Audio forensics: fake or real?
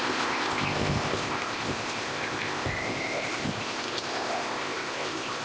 fake